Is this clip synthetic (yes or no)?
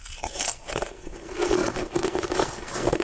yes